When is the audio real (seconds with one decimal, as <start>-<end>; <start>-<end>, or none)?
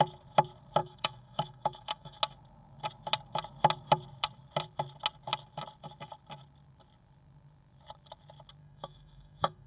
0.0-0.8; 2.2-8.6